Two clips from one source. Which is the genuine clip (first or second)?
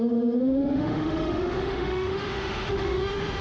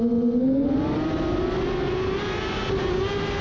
second